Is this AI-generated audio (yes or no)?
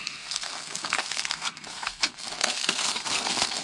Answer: yes